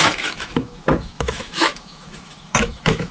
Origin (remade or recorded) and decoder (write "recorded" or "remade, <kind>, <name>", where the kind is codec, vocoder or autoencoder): remade, autoencoder, DAC-VAE